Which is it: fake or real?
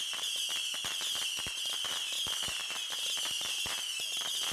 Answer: real